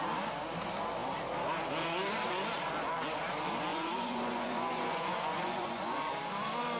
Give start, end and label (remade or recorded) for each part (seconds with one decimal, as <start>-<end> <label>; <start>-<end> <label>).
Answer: 0.0-3.7 recorded; 3.7-6.1 remade; 6.1-6.8 recorded